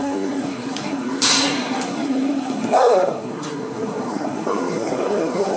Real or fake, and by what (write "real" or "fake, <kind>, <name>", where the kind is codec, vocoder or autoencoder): fake, codec, SNAC